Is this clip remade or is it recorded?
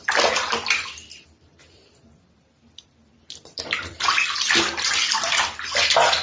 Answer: remade